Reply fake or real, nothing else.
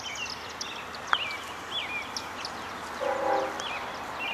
real